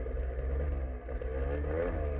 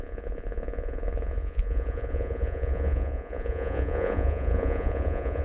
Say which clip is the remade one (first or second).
second